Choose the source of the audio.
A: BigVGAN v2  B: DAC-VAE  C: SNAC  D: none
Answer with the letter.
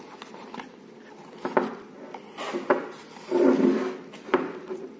D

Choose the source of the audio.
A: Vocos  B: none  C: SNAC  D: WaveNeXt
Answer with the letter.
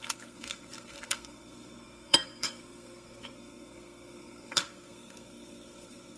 C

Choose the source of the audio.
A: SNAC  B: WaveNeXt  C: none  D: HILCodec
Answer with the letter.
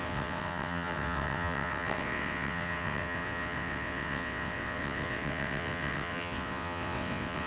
B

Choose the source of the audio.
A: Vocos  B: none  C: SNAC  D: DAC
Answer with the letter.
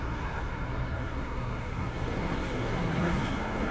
C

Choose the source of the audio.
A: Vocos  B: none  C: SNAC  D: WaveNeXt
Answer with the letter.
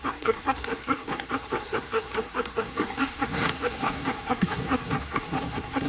C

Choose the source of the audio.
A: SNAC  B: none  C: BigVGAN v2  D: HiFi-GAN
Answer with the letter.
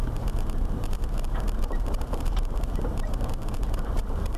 C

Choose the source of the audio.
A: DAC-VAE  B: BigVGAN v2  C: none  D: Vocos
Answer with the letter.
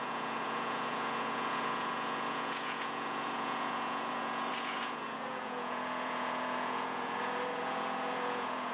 D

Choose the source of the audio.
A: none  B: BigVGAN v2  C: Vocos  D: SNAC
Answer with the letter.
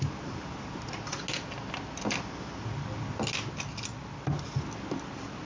A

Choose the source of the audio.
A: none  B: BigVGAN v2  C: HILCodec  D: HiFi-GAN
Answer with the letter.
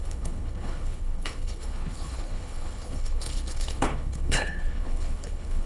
C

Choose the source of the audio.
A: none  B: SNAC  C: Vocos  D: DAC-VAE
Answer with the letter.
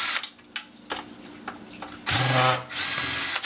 A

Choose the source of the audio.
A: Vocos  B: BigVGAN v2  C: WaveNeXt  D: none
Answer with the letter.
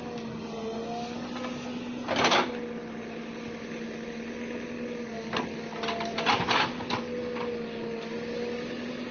D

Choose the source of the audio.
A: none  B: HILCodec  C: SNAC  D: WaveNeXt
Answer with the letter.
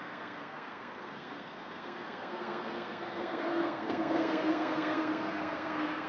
C